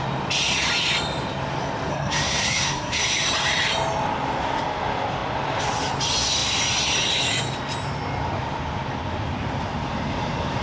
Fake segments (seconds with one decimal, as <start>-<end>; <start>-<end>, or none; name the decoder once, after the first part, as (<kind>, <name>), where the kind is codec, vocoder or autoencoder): 1.9-3.0 (codec, SNAC)